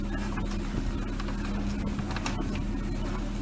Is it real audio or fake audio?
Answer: real